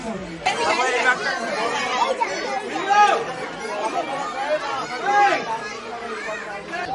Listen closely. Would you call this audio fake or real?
real